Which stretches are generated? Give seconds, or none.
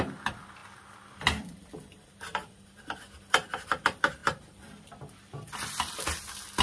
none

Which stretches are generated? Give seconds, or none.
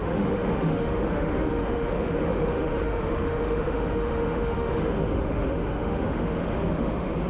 0.0-7.3 (autoencoder, DAC-VAE)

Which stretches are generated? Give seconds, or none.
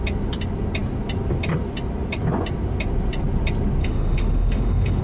3.8-5.0 (autoencoder, DAC-VAE)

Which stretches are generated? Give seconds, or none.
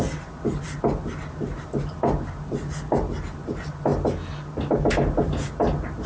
none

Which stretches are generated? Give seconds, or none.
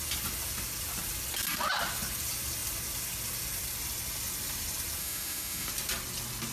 5.0-5.7 (autoencoder, DAC-VAE)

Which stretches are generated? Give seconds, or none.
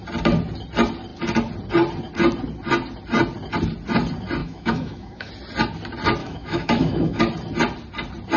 4.4-5.3 (autoencoder, DAC-VAE); 6.2-7.2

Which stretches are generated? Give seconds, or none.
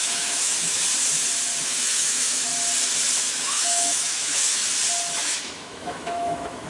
0.0-0.8 (autoencoder, DAC-VAE); 1.6-2.5; 3.2-4.6; 5.2-6.7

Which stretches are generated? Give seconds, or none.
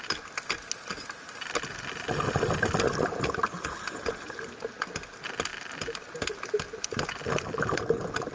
none